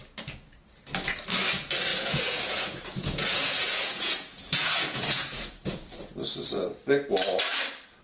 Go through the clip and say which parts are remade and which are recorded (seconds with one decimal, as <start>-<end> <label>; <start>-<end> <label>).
0.0-1.9 recorded; 1.9-6.0 remade; 6.0-8.0 recorded